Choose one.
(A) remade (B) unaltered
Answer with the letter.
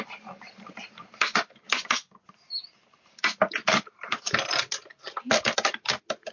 B